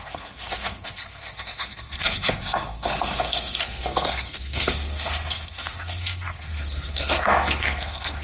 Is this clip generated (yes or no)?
yes